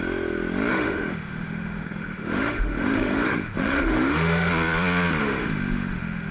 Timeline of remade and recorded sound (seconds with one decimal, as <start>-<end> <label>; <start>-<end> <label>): 0.0-0.7 recorded; 0.7-4.5 remade; 4.5-5.2 recorded; 5.2-6.3 remade